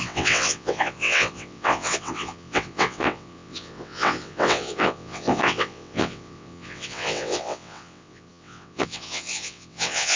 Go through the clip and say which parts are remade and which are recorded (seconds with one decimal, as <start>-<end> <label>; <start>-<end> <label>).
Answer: 0.0-10.2 remade